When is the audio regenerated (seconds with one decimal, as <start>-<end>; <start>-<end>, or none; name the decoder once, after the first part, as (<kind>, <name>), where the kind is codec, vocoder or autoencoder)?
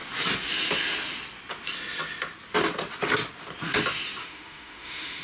4.2-5.2 (autoencoder, DAC-VAE)